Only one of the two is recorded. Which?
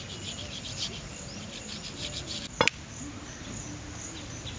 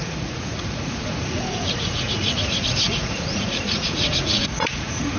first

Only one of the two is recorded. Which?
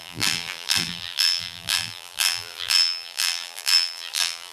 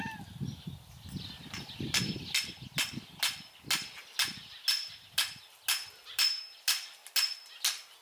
second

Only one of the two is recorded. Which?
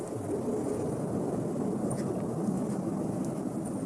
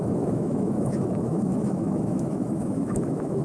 first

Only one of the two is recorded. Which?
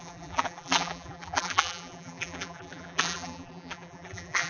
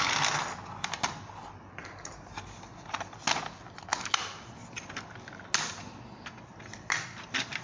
second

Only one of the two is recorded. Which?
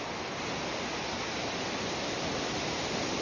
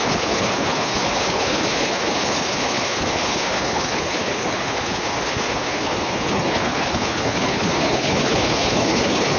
first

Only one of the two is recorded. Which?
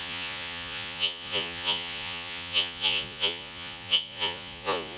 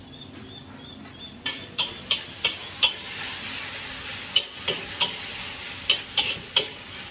second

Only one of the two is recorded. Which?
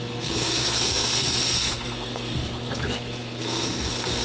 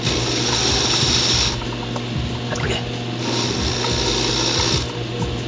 second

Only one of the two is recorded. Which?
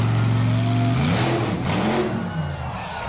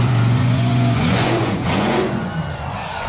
first